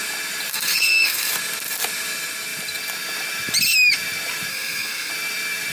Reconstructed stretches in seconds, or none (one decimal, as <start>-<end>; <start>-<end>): 0.5-1.3; 4.5-5.1